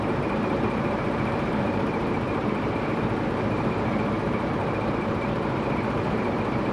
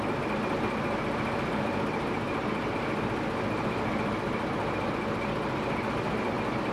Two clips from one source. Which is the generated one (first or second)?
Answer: first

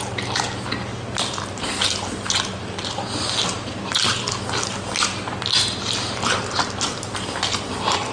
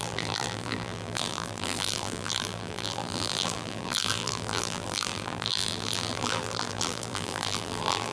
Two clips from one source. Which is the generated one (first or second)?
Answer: second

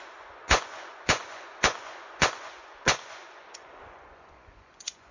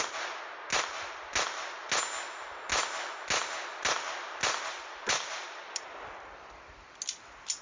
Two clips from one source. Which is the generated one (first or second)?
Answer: first